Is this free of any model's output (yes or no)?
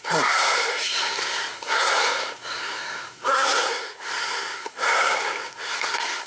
no